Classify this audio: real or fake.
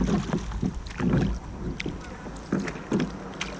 real